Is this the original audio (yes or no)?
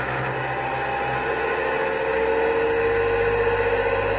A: yes